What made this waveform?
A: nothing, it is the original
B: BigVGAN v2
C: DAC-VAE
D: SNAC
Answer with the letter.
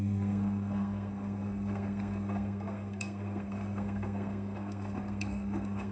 D